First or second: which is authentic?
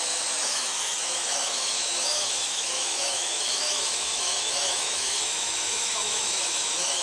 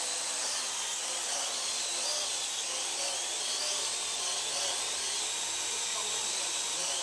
second